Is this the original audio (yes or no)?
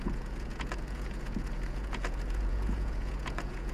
no